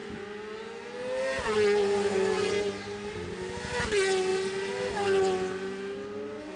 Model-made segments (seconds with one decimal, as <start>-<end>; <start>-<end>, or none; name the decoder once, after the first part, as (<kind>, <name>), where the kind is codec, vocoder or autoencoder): none